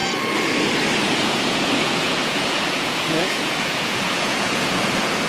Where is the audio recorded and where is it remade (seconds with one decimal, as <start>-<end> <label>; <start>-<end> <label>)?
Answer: 0.0-1.0 recorded; 1.0-5.3 remade